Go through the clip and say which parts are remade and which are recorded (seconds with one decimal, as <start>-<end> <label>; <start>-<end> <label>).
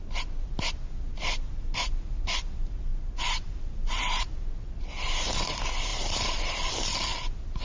0.0-2.9 recorded; 2.9-4.2 remade; 4.2-5.9 recorded; 5.9-6.7 remade; 6.7-7.6 recorded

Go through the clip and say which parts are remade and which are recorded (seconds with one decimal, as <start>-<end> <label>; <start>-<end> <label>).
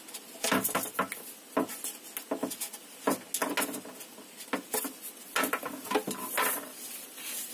0.0-7.5 recorded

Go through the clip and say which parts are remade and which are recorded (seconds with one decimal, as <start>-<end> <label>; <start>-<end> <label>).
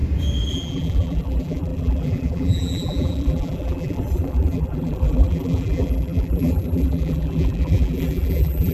0.0-0.5 recorded; 0.5-8.7 remade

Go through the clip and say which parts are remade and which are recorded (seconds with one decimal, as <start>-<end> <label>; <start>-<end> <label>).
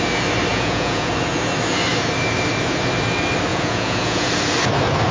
0.0-0.5 recorded; 0.5-1.1 remade; 1.1-3.5 recorded; 3.5-4.3 remade; 4.3-5.1 recorded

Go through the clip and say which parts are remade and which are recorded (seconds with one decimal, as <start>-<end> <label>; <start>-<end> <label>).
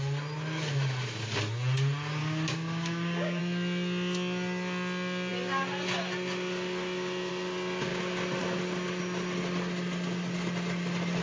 0.0-2.2 recorded; 2.2-3.4 remade; 3.4-11.2 recorded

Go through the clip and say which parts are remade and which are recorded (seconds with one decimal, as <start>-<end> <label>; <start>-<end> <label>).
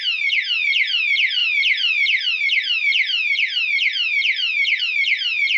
0.0-5.6 recorded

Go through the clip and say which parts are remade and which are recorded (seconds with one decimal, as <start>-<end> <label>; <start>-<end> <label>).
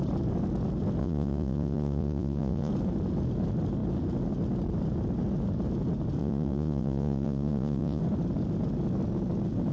0.0-1.0 recorded; 1.0-2.7 remade; 2.7-6.2 recorded; 6.2-8.0 remade; 8.0-9.7 recorded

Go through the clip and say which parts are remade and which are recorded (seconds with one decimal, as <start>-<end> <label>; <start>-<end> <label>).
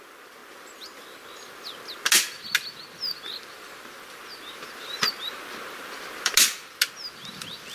0.0-7.7 recorded